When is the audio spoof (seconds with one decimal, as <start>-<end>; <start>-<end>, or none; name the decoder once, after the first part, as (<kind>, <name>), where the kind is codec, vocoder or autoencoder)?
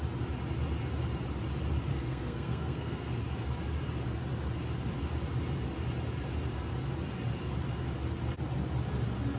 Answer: 1.9-3.1 (codec, SNAC)